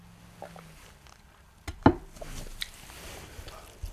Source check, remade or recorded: recorded